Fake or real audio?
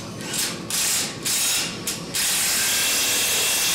real